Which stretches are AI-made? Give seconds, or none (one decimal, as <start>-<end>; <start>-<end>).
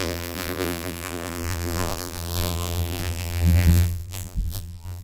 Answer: 0.0-5.0